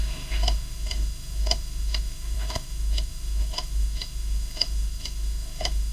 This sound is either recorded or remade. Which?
remade